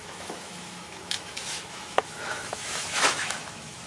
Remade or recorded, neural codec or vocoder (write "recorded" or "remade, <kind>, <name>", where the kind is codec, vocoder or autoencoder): remade, autoencoder, DAC-VAE